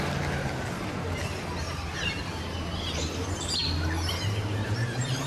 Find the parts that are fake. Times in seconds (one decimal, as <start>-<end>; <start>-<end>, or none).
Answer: none